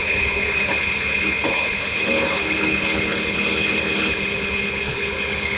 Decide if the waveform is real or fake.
fake